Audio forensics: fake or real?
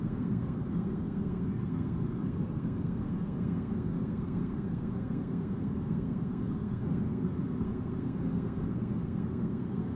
fake